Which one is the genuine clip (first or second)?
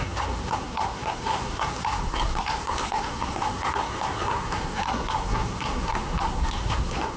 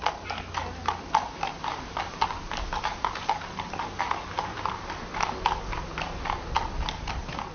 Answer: second